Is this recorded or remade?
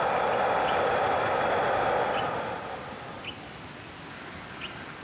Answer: recorded